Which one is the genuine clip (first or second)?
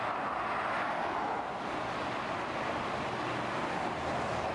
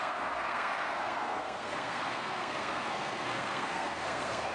first